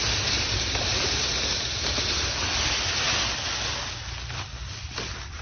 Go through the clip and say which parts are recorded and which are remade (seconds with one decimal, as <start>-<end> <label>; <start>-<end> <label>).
0.0-5.4 recorded